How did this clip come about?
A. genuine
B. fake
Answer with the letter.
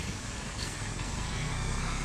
B